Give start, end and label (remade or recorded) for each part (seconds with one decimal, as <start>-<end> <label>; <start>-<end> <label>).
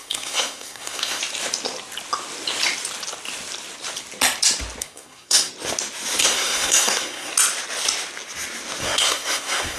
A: 0.0-1.2 remade; 1.2-4.8 recorded; 4.8-5.5 remade; 5.5-6.2 recorded; 6.2-7.3 remade; 7.3-8.8 recorded; 8.8-9.8 remade